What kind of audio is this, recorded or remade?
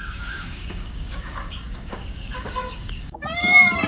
remade